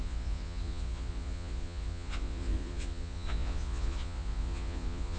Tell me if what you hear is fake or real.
fake